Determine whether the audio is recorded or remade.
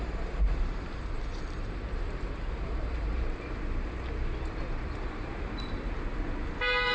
remade